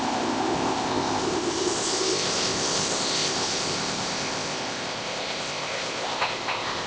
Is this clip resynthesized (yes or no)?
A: yes